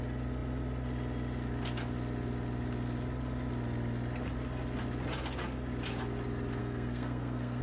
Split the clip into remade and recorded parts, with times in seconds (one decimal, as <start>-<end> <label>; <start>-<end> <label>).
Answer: 0.0-6.6 recorded; 6.6-7.6 remade

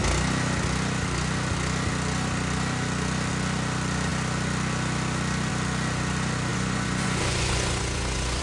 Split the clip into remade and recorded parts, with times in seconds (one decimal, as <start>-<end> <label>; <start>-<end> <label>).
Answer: 0.0-6.5 recorded; 6.5-8.4 remade

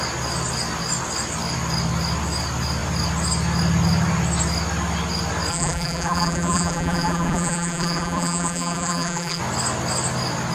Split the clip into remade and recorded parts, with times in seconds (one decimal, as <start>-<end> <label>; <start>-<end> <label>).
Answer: 0.0-5.5 recorded; 5.5-9.4 remade; 9.4-10.5 recorded